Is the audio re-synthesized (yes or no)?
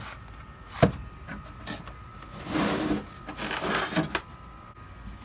no